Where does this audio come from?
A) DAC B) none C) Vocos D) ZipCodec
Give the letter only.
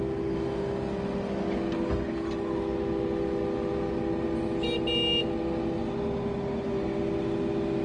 B